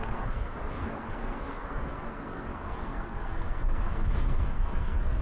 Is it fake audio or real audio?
fake